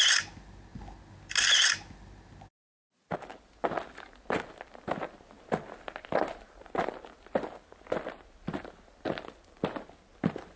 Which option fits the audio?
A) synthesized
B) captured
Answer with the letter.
B